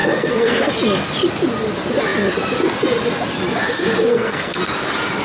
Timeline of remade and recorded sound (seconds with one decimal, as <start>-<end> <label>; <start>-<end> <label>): 0.0-0.7 remade; 0.7-4.1 recorded; 4.1-4.6 remade; 4.6-5.2 recorded